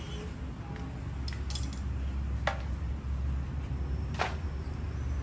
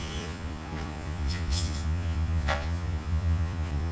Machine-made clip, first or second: second